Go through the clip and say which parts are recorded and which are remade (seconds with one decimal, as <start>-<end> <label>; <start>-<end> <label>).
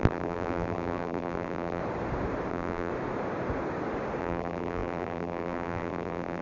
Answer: 0.0-1.8 remade; 1.8-2.5 recorded; 2.5-2.9 remade; 2.9-4.2 recorded; 4.2-6.4 remade